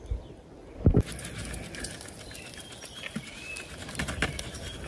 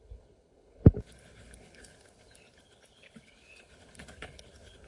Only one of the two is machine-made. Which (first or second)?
second